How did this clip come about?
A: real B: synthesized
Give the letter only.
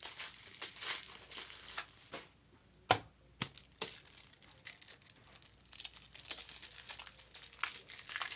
A